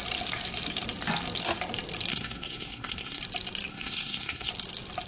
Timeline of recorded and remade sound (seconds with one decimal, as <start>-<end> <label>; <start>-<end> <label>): 0.0-2.1 recorded; 2.1-3.2 remade; 3.2-3.7 recorded; 3.7-4.5 remade; 4.5-5.1 recorded

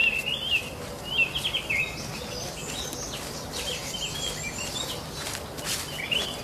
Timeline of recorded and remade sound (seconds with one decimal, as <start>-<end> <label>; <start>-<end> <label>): 0.0-6.4 recorded